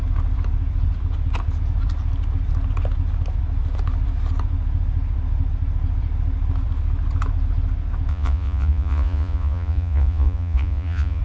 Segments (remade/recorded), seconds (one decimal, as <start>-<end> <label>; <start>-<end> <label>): 0.0-8.1 recorded; 8.1-11.2 remade

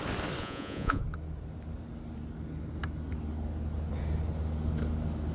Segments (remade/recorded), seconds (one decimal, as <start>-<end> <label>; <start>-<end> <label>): 0.0-0.4 recorded; 0.4-1.0 remade; 1.0-5.3 recorded

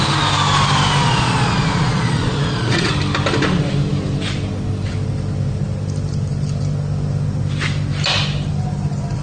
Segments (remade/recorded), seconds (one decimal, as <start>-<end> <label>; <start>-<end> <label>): 0.0-1.0 recorded; 1.0-2.9 remade; 2.9-9.2 recorded

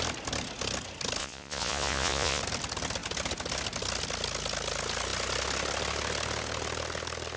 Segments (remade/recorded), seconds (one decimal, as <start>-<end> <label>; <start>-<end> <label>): 0.0-1.2 recorded; 1.2-2.4 remade; 2.4-7.4 recorded

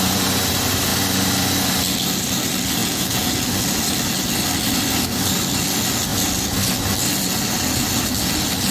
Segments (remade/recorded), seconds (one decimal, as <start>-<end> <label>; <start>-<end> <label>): 0.0-2.8 recorded; 2.8-3.3 remade; 3.3-8.7 recorded

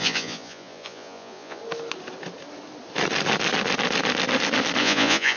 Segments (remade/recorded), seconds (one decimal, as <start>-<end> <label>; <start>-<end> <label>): 0.0-1.6 remade; 1.6-4.8 recorded; 4.8-5.4 remade

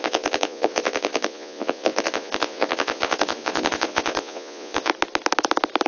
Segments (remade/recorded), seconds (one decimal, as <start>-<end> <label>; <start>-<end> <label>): 0.0-4.9 remade; 4.9-5.9 recorded

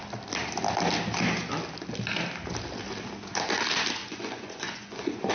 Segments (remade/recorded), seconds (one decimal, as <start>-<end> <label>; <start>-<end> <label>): 0.0-4.0 recorded; 4.0-5.3 remade